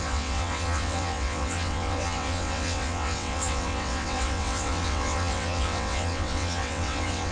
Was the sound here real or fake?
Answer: fake